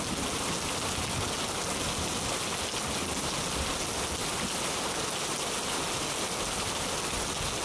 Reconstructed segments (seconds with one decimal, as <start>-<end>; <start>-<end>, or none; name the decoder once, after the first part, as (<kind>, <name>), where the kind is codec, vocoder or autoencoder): none